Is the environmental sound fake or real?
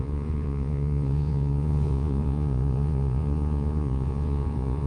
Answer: fake